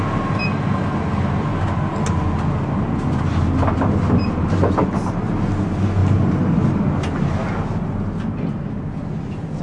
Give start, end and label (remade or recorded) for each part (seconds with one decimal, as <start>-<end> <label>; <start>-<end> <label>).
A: 0.0-9.6 recorded